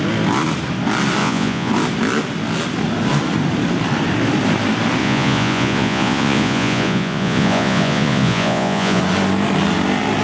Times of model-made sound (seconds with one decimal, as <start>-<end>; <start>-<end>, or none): 1.2-1.7; 5.0-9.0